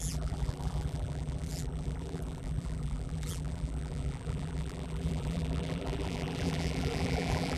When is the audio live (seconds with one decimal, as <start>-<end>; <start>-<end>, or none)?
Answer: none